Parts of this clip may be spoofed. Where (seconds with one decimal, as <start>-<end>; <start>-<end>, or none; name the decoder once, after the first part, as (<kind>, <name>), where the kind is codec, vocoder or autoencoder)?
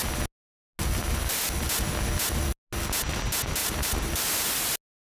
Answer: 3.6-4.1 (vocoder, BigVGAN v2)